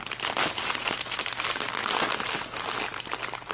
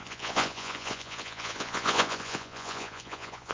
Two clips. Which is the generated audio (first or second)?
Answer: second